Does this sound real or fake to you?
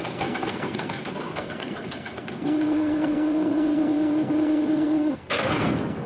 fake